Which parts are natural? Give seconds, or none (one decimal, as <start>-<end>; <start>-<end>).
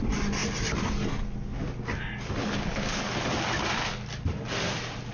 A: 0.0-2.4; 3.1-5.1